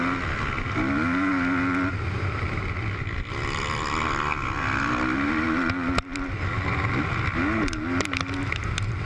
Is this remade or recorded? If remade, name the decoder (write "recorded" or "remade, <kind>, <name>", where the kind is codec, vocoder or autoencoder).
recorded